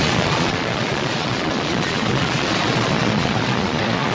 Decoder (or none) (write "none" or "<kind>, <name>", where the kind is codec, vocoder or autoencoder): vocoder, Vocos